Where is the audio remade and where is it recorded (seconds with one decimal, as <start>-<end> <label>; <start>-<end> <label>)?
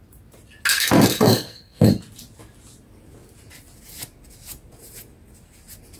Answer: 0.0-0.7 recorded; 0.7-1.9 remade; 1.9-6.0 recorded